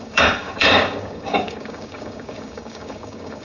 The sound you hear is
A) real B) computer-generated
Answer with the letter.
B